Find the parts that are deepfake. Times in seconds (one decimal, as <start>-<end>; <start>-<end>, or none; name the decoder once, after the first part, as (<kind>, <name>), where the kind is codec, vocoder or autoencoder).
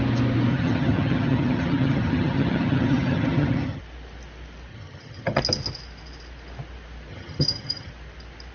0.5-3.8 (vocoder, HiFi-GAN); 4.7-5.4; 7.1-7.9